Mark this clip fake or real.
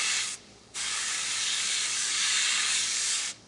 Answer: fake